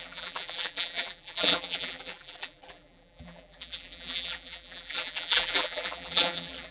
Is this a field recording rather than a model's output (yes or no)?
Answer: no